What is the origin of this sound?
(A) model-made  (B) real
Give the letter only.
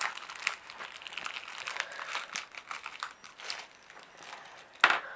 B